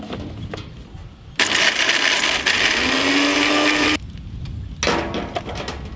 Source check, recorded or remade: recorded